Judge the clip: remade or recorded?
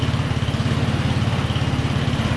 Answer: recorded